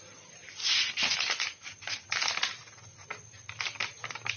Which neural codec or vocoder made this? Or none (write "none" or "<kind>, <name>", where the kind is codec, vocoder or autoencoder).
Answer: none